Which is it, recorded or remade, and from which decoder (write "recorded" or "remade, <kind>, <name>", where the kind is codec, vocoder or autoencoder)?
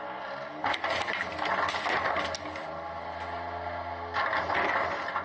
recorded